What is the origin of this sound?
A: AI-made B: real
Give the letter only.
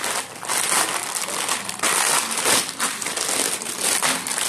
B